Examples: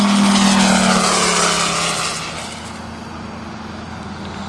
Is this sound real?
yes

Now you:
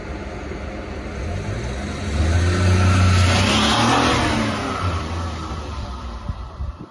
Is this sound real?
yes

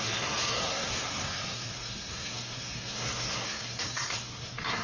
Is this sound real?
no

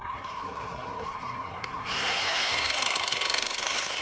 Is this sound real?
no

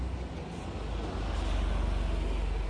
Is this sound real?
yes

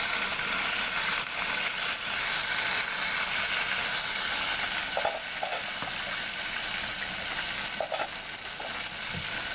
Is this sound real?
yes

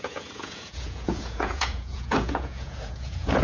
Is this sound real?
no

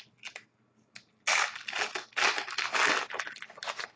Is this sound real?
yes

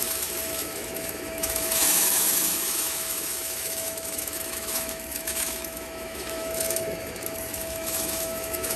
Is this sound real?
no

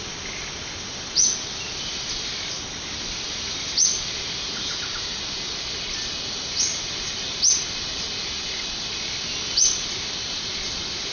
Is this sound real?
yes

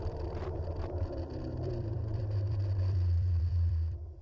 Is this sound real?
no